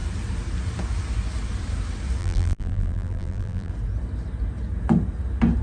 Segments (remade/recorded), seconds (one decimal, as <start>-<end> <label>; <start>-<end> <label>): 0.0-2.2 recorded; 2.2-3.7 remade; 3.7-5.6 recorded